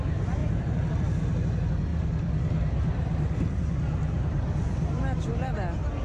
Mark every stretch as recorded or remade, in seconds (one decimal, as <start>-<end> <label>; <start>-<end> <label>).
0.0-0.4 recorded; 0.4-1.2 remade; 1.2-1.9 recorded; 1.9-5.5 remade; 5.5-6.0 recorded

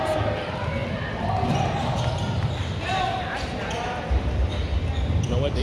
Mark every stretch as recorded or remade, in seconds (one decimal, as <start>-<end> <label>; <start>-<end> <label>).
0.0-5.6 recorded

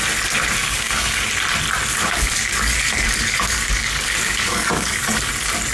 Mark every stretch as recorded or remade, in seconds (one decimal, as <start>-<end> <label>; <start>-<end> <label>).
0.0-0.6 recorded; 0.6-1.3 remade; 1.3-1.9 recorded; 1.9-5.3 remade; 5.3-5.7 recorded

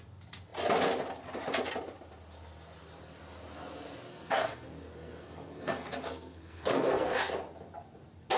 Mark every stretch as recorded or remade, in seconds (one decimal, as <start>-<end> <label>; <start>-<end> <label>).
0.0-4.1 recorded; 4.1-7.3 remade; 7.3-8.4 recorded

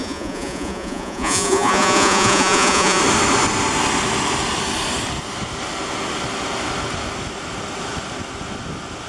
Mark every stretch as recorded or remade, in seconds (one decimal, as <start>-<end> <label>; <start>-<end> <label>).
0.0-3.0 remade; 3.0-9.1 recorded

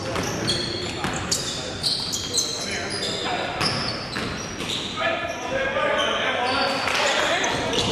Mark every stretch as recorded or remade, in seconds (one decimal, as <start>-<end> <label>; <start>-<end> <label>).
0.0-7.9 recorded

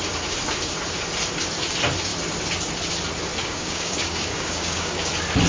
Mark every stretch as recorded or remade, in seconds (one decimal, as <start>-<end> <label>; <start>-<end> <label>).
0.0-3.4 recorded; 3.4-5.1 remade; 5.1-5.5 recorded

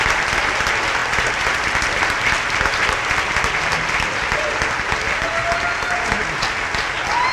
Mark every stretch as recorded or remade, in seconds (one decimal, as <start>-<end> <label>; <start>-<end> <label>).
0.0-1.0 recorded; 1.0-3.3 remade; 3.3-7.3 recorded